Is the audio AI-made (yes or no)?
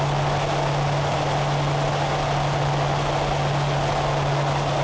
no